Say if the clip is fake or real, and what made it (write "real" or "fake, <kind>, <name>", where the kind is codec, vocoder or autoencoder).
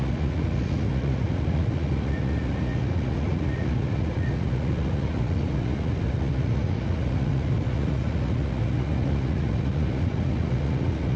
fake, vocoder, Vocos